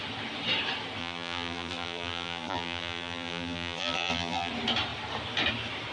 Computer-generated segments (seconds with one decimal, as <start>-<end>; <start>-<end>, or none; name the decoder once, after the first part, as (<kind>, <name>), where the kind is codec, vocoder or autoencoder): 1.0-4.5 (vocoder, BigVGAN v2)